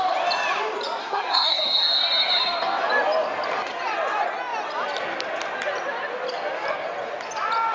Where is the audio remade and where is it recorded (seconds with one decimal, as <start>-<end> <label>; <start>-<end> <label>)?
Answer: 0.0-1.0 recorded; 1.0-1.6 remade; 1.6-7.7 recorded